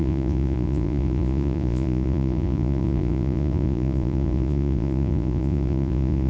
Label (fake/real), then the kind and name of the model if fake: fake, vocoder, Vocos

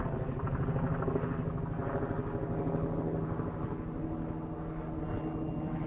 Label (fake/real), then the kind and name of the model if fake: real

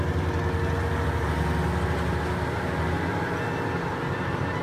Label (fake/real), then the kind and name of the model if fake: real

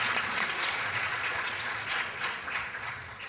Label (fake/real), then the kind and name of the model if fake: fake, vocoder, Vocos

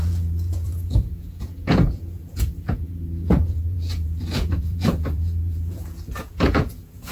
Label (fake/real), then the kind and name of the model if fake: fake, vocoder, Vocos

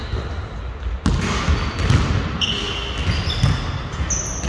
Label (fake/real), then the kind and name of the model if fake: real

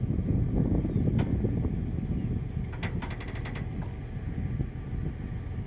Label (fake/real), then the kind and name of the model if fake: real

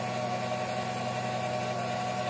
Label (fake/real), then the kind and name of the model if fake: real